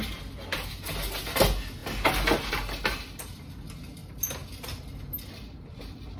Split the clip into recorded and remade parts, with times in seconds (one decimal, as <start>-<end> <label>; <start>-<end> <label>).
0.0-6.2 recorded

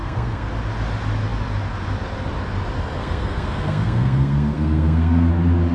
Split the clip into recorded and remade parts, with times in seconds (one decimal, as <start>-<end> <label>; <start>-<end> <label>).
0.0-0.5 remade; 0.5-3.0 recorded; 3.0-5.3 remade; 5.3-5.7 recorded

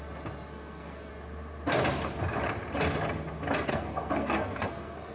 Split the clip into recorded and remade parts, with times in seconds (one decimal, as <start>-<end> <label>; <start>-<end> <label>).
0.0-0.5 recorded; 0.5-1.1 remade; 1.1-3.7 recorded; 3.7-5.1 remade

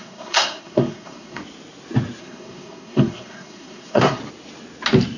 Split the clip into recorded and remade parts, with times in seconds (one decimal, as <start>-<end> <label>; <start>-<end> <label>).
0.0-1.4 remade; 1.4-2.2 recorded; 2.2-4.2 remade; 4.2-5.2 recorded

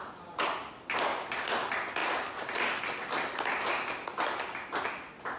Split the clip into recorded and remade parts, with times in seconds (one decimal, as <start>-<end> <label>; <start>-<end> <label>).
0.0-5.4 recorded

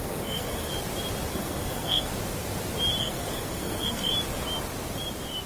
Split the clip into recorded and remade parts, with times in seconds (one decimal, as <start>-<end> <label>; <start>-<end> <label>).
0.0-0.7 remade; 0.7-1.3 recorded; 1.3-2.1 remade; 2.1-3.0 recorded; 3.0-4.1 remade; 4.1-5.5 recorded